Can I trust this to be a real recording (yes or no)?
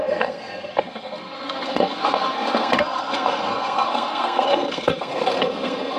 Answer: no